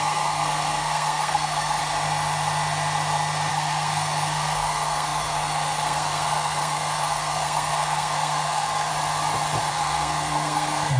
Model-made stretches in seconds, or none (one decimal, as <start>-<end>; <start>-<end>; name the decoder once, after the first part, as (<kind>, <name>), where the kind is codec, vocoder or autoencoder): 0.0-1.8 (codec, SNAC); 3.5-8.9; 9.7-11.0